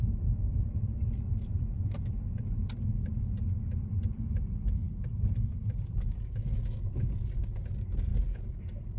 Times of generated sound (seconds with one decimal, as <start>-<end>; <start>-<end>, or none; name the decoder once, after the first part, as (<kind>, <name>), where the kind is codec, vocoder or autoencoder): 0.5-4.2 (vocoder, BigVGAN v2); 4.8-6.6